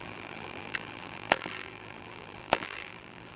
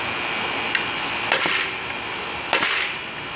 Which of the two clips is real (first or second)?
second